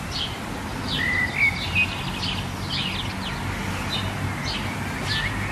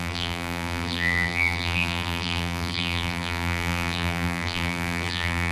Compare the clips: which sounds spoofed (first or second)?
second